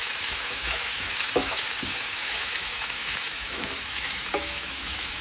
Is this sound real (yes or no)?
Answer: no